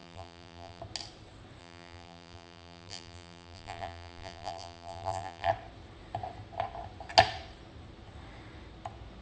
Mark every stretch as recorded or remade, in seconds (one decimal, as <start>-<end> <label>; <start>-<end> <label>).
0.0-0.8 remade; 0.8-1.6 recorded; 1.6-5.5 remade; 5.5-9.2 recorded